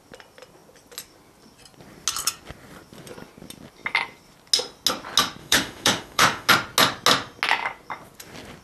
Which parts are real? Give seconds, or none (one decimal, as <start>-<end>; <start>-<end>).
0.0-5.4; 6.5-8.6

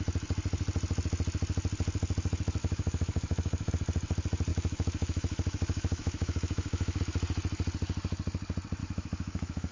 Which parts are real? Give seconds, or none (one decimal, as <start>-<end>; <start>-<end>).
0.0-2.6; 3.7-4.5; 7.0-8.8

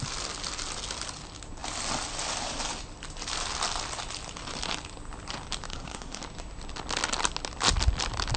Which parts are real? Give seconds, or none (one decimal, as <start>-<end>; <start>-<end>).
0.0-5.7; 6.2-8.4

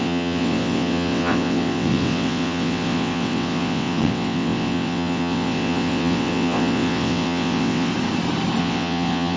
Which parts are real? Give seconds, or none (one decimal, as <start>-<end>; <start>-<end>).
7.9-8.6